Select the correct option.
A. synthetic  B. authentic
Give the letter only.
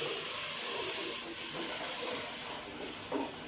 B